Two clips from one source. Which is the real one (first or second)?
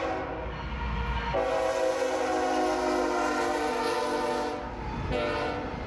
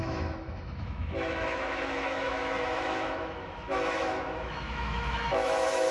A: first